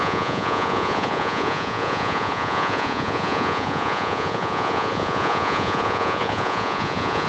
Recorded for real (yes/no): no